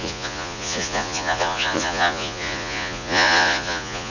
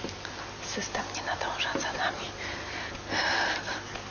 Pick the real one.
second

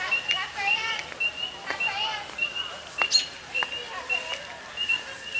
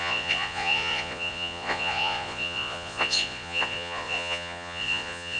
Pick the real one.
first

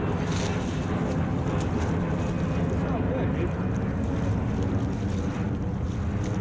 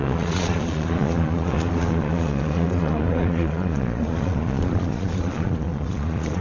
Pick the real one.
first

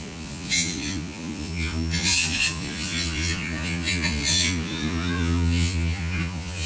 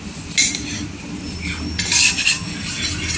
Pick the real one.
second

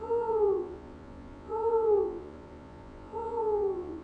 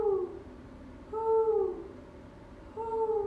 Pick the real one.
second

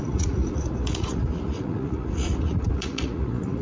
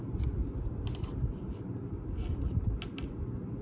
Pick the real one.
second